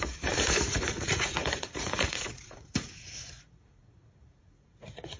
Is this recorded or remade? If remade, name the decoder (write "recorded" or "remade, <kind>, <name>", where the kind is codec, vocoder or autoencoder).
remade, vocoder, Vocos